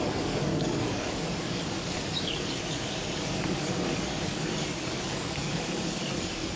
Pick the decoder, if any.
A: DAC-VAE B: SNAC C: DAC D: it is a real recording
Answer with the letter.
C